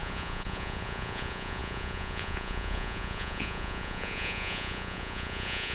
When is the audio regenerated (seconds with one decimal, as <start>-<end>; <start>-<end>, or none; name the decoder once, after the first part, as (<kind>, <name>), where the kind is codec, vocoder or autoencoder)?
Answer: 0.0-5.7 (vocoder, Vocos)